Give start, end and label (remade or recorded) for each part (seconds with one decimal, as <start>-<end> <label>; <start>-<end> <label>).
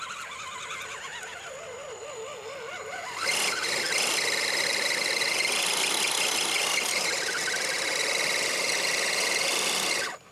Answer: 0.0-10.3 recorded